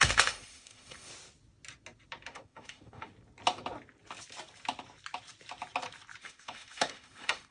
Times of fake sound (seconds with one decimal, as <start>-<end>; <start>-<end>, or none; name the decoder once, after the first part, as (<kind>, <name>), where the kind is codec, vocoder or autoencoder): 0.0-1.1 (autoencoder, DAC-VAE); 2.3-3.1; 6.2-7.5